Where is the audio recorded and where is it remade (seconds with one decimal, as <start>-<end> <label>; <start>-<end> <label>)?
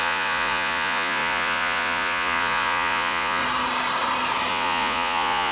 0.0-3.4 remade; 3.4-4.5 recorded; 4.5-5.5 remade